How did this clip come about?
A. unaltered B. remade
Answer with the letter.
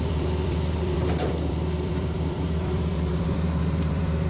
B